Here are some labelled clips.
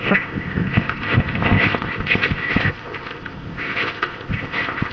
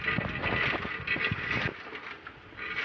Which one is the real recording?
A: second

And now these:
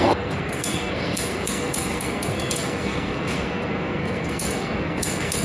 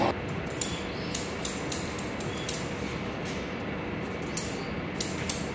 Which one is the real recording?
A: second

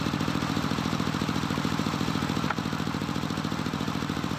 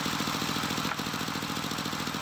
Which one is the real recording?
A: second